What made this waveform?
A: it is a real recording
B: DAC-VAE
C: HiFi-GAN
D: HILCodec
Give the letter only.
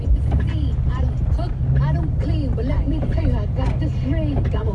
A